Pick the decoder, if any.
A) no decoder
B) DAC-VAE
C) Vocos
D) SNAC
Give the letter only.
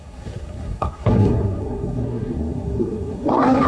D